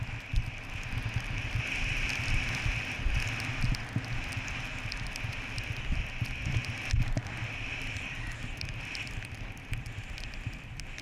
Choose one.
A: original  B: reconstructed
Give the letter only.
A